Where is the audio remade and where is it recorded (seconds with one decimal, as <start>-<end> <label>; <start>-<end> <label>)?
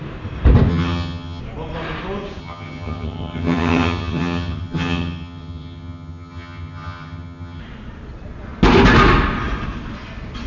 0.0-0.7 recorded; 0.7-1.4 remade; 1.4-2.4 recorded; 2.4-7.6 remade; 7.6-10.5 recorded